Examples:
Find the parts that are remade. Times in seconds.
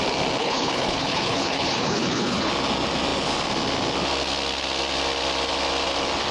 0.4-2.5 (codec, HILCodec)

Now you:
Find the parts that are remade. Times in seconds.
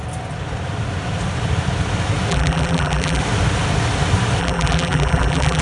2.3-3.2 (vocoder, BigVGAN v2); 4.4-5.6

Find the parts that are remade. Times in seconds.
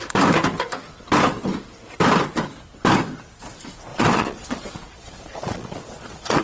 3.9-6.4 (vocoder, Vocos)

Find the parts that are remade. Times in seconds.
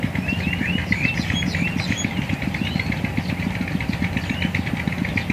none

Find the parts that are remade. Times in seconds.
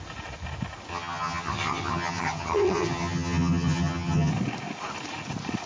0.9-4.3 (vocoder, HiFi-GAN)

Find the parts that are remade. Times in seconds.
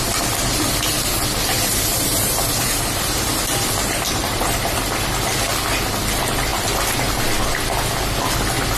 1.9-4.8 (vocoder, BigVGAN v2)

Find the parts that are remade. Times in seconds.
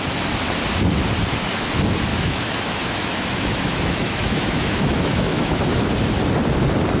2.1-5.9 (autoencoder, DAC-VAE)